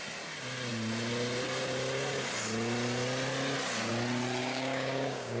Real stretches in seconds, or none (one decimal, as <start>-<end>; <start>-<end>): 0.0-4.4